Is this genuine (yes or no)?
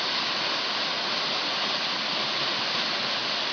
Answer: yes